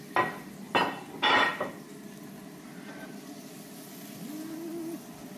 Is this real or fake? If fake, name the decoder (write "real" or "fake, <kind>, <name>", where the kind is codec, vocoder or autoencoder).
real